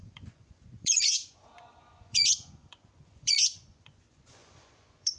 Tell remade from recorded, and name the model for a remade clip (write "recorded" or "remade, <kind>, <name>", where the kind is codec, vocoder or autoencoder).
remade, vocoder, Vocos